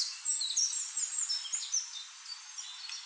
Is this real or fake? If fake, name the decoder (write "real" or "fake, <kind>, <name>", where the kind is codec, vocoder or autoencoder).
real